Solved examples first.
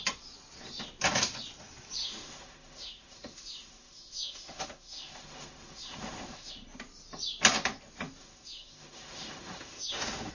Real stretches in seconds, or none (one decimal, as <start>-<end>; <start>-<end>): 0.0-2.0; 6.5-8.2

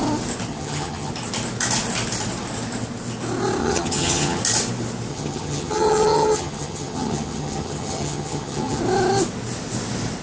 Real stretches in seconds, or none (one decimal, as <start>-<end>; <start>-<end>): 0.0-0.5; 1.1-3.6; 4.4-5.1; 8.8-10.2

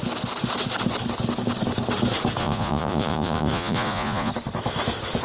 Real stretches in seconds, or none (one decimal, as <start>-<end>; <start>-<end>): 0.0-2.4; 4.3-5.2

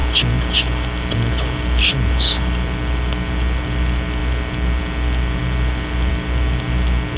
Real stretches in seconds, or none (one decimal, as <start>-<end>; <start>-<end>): 0.0-7.2

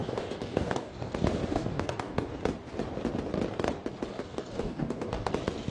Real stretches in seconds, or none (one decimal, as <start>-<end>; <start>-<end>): 1.1-1.5; 2.4-4.1; 5.3-5.7